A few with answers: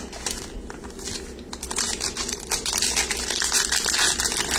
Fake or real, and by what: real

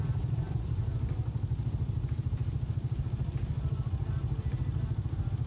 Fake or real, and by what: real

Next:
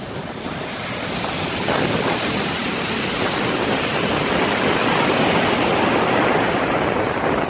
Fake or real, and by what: real